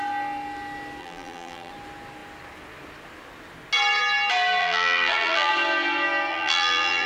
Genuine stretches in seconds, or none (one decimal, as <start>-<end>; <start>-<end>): 0.0-1.0; 1.7-4.6; 5.5-6.3